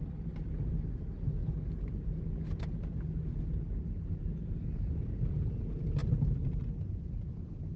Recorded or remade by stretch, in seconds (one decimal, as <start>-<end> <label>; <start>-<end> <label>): 0.0-7.8 recorded